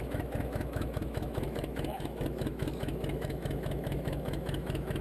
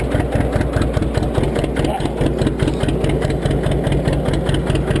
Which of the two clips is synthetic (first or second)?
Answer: first